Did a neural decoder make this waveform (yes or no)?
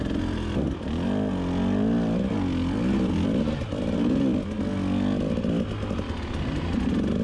no